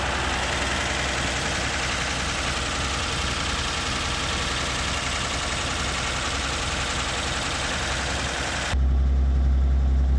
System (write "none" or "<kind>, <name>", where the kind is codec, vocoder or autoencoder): none